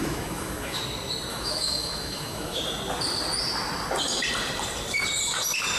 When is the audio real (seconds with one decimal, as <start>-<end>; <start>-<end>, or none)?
0.8-1.3; 2.6-5.8